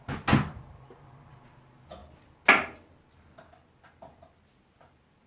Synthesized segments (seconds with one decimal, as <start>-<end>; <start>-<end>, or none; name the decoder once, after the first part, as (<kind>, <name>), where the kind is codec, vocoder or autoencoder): none